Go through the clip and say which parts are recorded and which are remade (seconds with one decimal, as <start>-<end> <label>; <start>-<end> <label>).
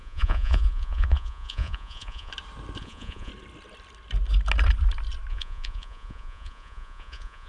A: 0.0-2.3 remade; 2.3-2.8 recorded; 2.8-3.3 remade; 3.3-5.3 recorded; 5.3-7.5 remade